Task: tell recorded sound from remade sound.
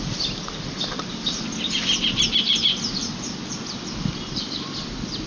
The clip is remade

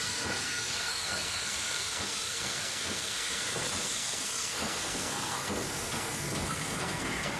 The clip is remade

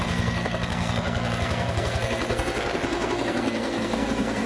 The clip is remade